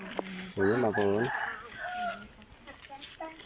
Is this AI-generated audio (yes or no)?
no